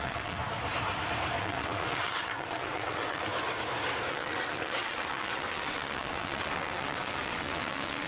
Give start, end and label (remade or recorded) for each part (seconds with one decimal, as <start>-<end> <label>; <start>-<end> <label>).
0.0-0.4 remade; 0.4-1.4 recorded; 1.4-3.3 remade; 3.3-4.1 recorded; 4.1-8.1 remade